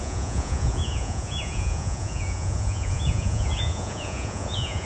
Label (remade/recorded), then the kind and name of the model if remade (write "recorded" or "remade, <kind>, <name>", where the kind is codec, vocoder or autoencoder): remade, vocoder, Vocos